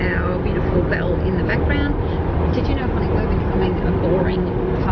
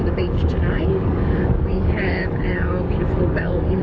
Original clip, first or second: first